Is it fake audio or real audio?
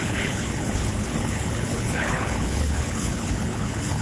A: fake